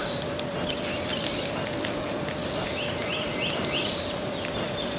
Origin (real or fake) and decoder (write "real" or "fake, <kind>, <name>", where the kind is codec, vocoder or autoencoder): real